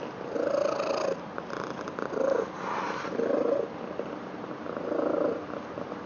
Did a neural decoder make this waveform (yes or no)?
no